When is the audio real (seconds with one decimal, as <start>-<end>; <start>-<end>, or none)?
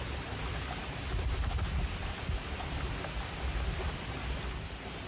0.0-5.1